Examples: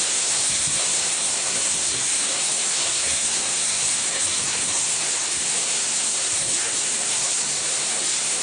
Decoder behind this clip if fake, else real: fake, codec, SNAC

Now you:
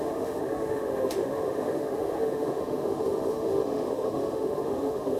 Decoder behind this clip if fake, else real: fake, autoencoder, DAC-VAE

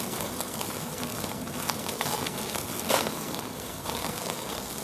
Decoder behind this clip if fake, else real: fake, codec, SNAC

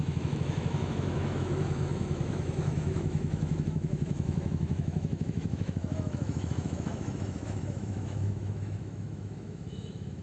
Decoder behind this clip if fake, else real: fake, autoencoder, DAC-VAE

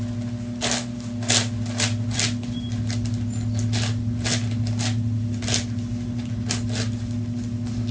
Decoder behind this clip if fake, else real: real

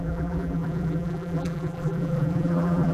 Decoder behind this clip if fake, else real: fake, vocoder, BigVGAN v2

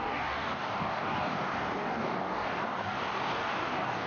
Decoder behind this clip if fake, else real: fake, codec, DAC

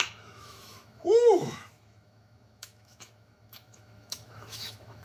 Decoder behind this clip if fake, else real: fake, autoencoder, DAC-VAE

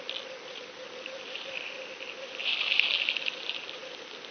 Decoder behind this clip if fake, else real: real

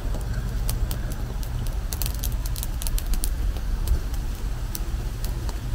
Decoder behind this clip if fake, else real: real